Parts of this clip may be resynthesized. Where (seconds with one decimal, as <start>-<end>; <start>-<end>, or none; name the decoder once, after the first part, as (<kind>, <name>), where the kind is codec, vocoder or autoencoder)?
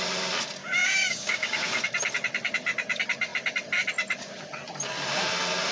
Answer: 0.6-1.8 (codec, DAC)